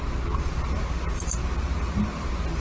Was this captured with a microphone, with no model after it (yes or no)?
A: yes